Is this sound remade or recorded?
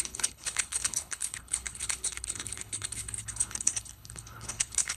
remade